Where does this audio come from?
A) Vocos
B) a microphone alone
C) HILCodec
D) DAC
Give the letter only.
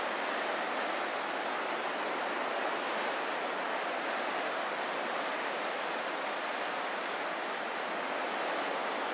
B